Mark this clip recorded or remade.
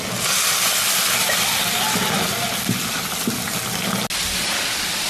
recorded